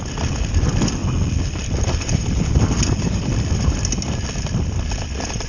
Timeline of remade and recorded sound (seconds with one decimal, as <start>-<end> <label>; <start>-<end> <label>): 0.0-1.0 recorded; 1.0-4.3 remade; 4.3-5.5 recorded